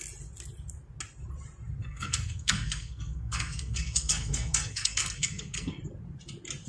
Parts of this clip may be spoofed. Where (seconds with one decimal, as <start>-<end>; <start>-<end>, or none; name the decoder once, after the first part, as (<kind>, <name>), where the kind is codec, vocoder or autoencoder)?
1.8-5.8 (codec, SNAC)